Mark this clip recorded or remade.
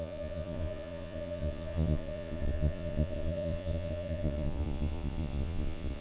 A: remade